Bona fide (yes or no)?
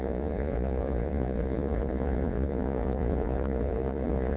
no